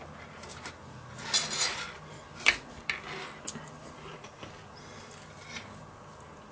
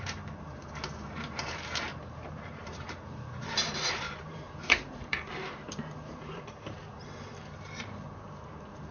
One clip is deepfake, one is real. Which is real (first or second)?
first